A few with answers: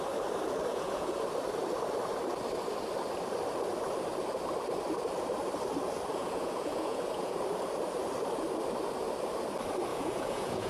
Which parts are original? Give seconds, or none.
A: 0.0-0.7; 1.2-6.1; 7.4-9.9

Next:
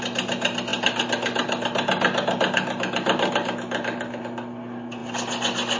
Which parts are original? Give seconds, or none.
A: 0.0-5.8

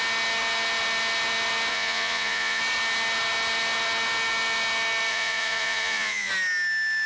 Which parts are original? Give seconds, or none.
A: 0.0-1.7; 2.6-5.1; 6.3-7.1

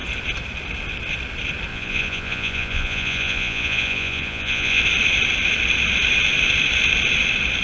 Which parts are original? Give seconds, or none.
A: 0.0-1.7; 4.8-7.6

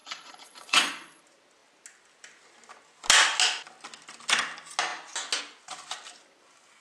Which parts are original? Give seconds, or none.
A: 1.2-6.8

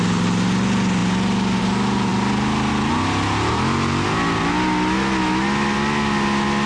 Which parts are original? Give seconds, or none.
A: 0.0-6.7